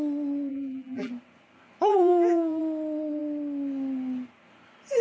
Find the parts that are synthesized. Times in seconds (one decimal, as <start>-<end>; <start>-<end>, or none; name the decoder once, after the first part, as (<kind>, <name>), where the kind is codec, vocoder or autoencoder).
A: 0.5-1.1 (vocoder, BigVGAN v2); 1.9-2.6